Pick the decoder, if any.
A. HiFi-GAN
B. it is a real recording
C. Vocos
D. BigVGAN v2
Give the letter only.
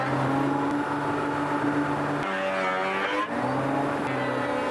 B